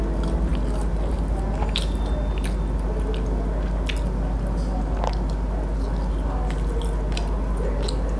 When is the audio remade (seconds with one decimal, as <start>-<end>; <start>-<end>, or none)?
none